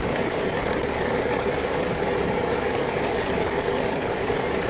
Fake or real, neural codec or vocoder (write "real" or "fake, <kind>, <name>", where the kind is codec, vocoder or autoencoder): fake, codec, DAC